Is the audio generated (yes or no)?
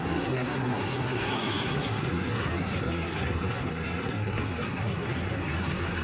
yes